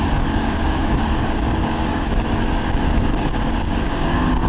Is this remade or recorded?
remade